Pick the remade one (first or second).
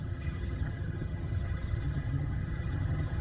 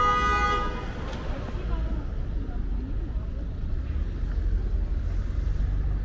first